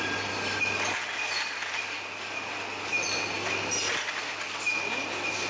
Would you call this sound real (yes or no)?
yes